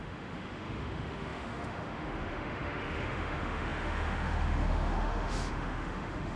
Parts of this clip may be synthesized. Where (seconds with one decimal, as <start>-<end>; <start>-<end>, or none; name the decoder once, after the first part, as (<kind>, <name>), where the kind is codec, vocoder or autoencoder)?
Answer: 0.0-6.4 (autoencoder, DAC-VAE)